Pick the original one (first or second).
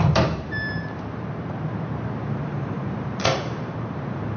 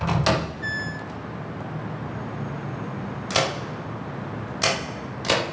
second